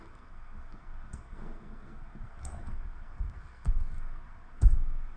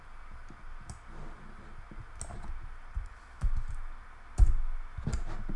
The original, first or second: second